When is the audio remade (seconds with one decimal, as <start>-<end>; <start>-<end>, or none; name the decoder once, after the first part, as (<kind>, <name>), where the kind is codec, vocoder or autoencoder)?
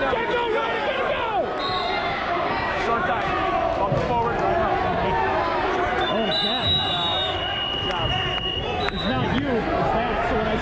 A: 2.0-3.3 (codec, DAC)